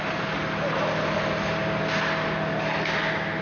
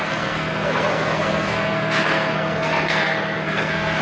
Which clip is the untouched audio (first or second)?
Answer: first